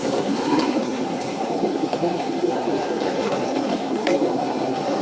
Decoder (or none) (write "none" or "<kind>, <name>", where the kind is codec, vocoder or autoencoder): codec, SNAC